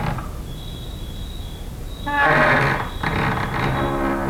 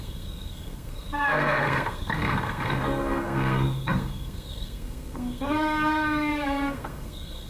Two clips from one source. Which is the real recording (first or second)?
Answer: first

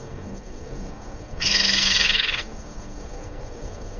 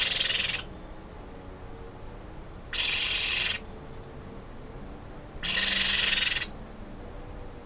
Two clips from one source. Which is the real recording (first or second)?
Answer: second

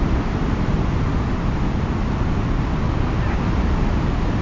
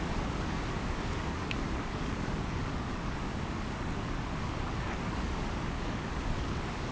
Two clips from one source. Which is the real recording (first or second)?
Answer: first